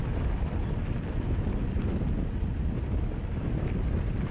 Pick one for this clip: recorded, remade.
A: recorded